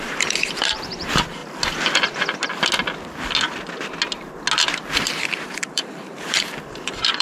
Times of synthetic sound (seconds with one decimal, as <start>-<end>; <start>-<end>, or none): 0.0-1.4; 5.7-7.2